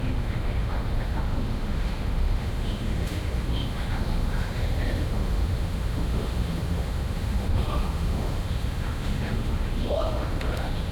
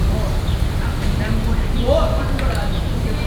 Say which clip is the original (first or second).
second